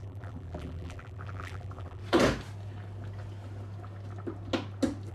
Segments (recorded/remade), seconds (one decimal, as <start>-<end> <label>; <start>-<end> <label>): 0.0-2.0 remade; 2.0-5.1 recorded